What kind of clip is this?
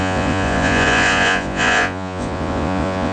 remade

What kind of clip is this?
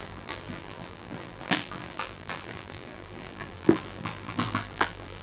remade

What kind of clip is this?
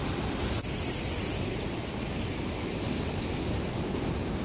recorded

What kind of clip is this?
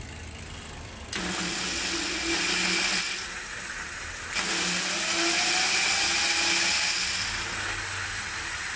recorded